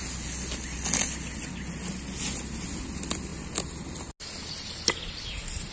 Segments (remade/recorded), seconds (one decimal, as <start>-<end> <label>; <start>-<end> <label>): 0.0-5.7 recorded